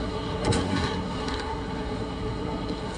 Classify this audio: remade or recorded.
remade